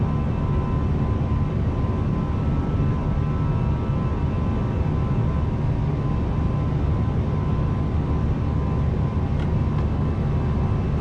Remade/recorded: recorded